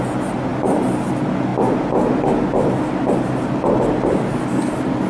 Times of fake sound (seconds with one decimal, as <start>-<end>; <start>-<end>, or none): none